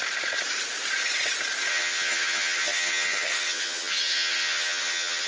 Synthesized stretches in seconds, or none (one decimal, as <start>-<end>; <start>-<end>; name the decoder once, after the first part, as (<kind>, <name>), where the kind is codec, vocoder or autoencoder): 1.7-5.3 (vocoder, HiFi-GAN)